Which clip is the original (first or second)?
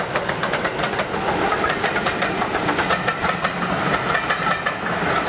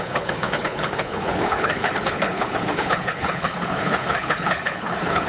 first